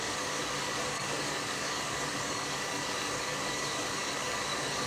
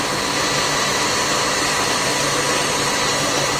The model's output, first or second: first